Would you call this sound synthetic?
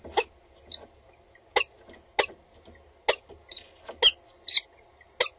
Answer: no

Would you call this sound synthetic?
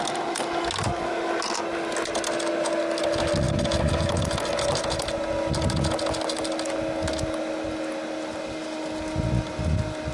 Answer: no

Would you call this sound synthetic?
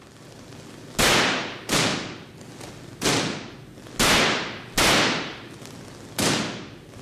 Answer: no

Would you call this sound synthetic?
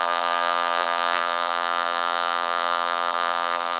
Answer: yes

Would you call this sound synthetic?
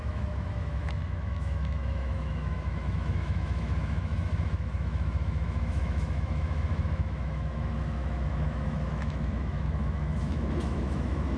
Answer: yes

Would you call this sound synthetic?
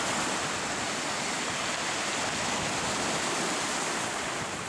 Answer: no